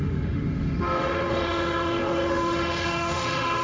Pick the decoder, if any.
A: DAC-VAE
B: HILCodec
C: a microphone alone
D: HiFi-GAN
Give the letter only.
A